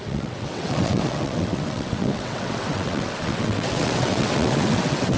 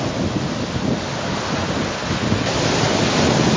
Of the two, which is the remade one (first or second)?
first